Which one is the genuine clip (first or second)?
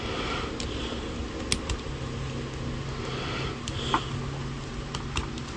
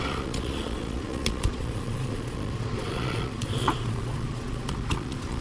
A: first